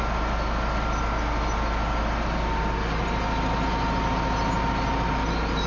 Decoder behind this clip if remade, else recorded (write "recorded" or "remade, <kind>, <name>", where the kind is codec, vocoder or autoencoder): recorded